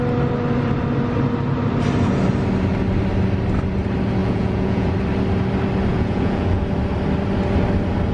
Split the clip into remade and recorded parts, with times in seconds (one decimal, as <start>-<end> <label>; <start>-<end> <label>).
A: 0.0-4.2 recorded; 4.2-4.9 remade; 4.9-5.9 recorded; 5.9-6.6 remade; 6.6-8.1 recorded